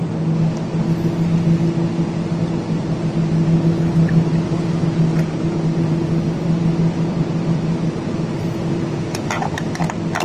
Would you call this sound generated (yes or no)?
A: no